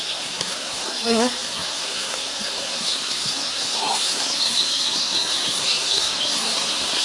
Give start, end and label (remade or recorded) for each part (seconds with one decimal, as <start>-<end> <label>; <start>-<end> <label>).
0.0-7.0 remade